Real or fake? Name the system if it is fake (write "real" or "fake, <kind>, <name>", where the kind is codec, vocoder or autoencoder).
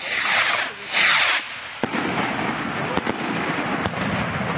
real